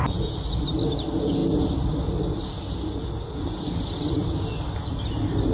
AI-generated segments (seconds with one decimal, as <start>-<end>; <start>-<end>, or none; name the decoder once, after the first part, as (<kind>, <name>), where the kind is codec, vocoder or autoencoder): none